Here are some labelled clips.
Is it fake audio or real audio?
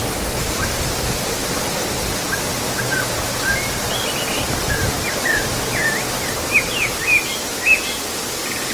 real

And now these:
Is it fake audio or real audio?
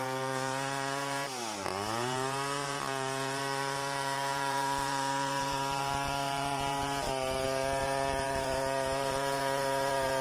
fake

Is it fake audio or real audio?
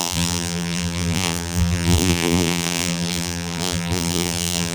fake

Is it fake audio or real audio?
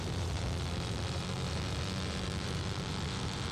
fake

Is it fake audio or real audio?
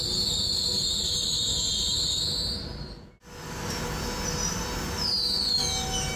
real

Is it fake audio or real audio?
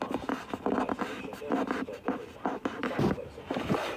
real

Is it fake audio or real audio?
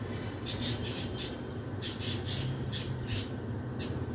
real